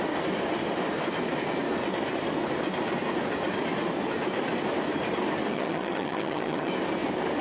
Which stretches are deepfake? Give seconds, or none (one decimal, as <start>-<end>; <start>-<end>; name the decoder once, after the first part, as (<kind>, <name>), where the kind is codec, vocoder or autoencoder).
5.5-6.7 (vocoder, HiFi-GAN)